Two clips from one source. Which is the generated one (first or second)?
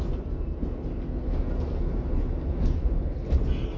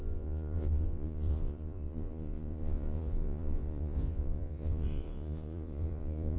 second